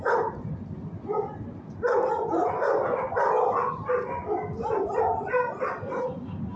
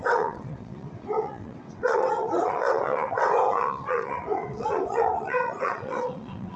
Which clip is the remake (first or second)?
second